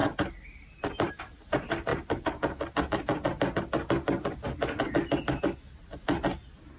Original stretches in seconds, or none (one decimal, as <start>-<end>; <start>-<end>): 0.0-6.8